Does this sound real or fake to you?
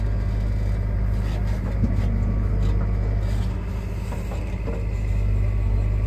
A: real